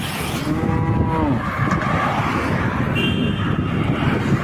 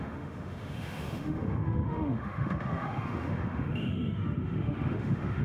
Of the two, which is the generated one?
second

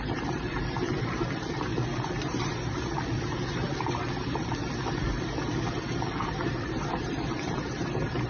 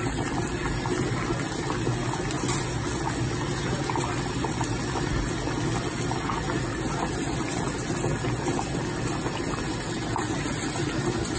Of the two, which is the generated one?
first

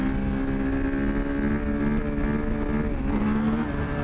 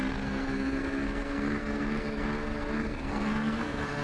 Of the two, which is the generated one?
second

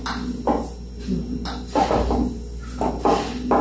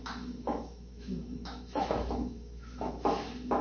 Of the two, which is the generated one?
second